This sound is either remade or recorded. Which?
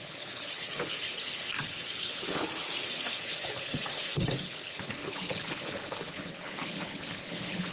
remade